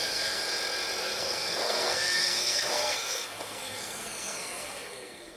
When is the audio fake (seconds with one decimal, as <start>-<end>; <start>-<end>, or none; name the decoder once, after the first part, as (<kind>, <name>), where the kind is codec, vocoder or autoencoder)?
0.0-0.4 (codec, SNAC); 1.0-5.4